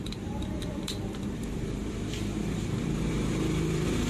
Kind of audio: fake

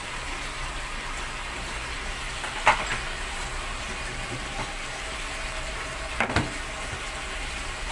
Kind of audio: fake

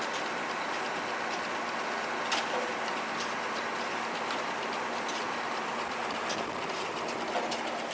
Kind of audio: real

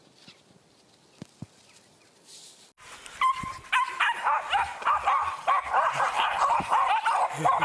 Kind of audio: real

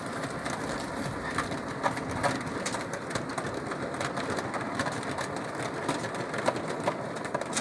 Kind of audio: real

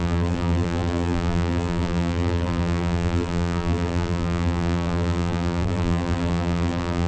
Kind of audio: fake